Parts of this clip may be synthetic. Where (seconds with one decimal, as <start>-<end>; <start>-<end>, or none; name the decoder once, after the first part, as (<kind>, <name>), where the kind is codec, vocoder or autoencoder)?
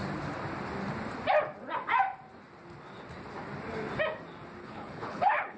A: 4.6-5.6 (codec, HILCodec)